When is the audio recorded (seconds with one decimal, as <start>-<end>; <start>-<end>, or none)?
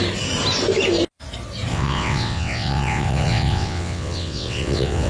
0.0-1.7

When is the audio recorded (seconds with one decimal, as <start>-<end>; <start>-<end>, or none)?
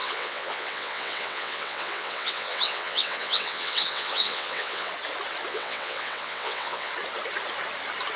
4.9-5.5; 6.9-8.2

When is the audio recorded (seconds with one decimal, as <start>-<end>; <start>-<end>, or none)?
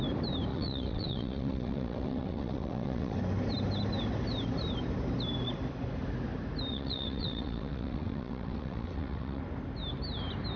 0.0-0.5; 3.2-6.7; 9.4-10.6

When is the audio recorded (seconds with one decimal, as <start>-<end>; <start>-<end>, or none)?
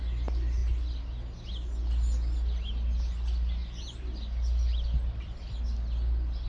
0.0-6.5